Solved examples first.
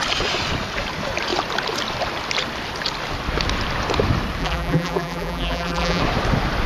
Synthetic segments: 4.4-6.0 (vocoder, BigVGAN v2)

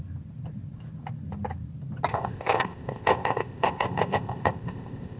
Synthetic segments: 2.1-5.2 (codec, ZipCodec)

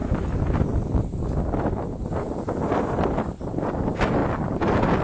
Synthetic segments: none

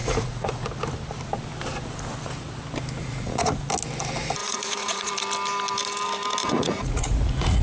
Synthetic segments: 0.0-0.7 (vocoder, Vocos); 3.0-3.7; 4.4-5.1; 6.4-7.6

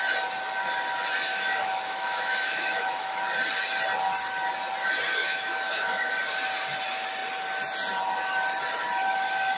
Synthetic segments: 1.3-3.2 (autoencoder, DAC-VAE); 5.2-6.1

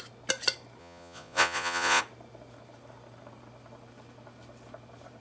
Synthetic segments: 0.8-2.0 (vocoder, Vocos)